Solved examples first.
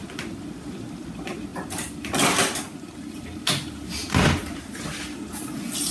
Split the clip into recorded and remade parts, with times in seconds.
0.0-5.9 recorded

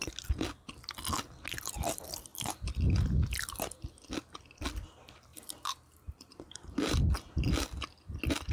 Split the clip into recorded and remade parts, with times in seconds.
0.0-5.3 recorded; 5.3-6.8 remade; 6.8-8.5 recorded

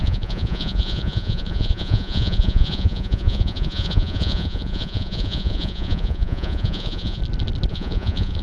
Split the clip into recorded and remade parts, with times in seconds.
0.0-7.2 remade; 7.2-7.7 recorded; 7.7-8.4 remade